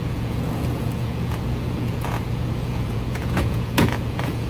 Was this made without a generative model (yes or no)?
no